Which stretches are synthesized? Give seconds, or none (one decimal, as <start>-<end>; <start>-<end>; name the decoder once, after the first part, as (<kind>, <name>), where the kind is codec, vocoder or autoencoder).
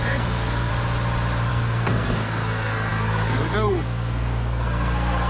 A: 0.0-0.7 (codec, SNAC); 1.5-5.3